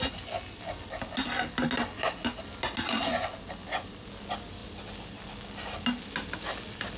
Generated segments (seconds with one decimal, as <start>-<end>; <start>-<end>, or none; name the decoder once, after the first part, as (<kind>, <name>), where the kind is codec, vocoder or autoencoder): none